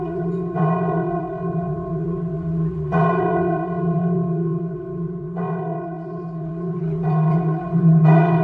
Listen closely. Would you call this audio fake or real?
fake